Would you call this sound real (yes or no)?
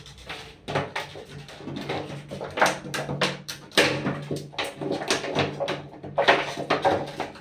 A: yes